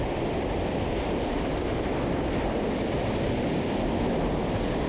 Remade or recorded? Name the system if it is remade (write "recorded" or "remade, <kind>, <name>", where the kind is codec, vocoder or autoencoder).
recorded